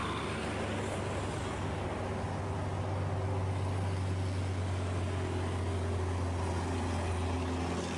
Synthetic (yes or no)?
no